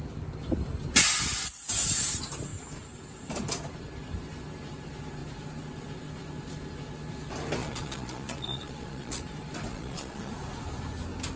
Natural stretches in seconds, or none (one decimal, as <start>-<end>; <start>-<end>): 0.0-7.6; 9.2-9.7; 10.3-11.4